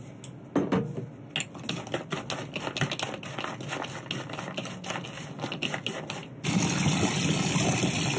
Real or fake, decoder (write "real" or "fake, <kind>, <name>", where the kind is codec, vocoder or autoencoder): real